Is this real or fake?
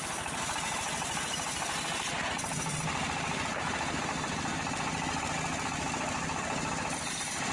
real